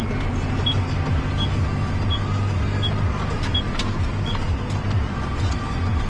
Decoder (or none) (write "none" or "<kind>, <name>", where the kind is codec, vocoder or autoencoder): none